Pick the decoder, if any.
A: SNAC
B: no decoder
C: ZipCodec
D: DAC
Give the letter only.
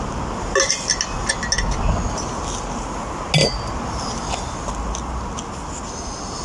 B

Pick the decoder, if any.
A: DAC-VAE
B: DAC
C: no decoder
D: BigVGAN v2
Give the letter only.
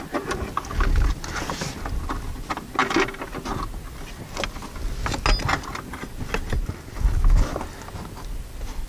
C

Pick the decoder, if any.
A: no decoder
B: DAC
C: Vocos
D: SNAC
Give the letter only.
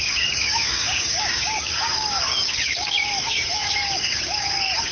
B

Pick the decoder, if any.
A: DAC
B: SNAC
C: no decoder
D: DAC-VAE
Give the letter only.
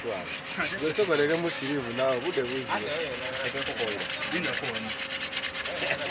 C